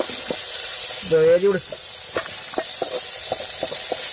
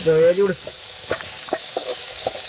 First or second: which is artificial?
second